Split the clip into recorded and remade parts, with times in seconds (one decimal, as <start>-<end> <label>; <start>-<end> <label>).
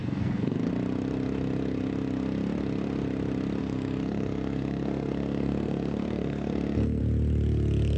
0.0-0.7 remade; 0.7-3.6 recorded; 3.6-7.0 remade; 7.0-8.0 recorded